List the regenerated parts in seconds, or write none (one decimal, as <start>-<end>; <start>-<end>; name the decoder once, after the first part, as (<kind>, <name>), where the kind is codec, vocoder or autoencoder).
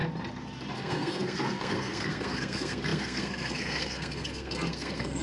0.7-5.2 (codec, SNAC)